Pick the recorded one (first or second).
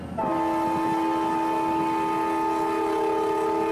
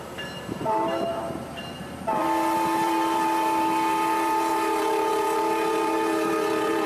first